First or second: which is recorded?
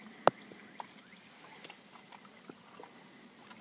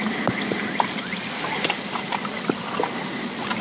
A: first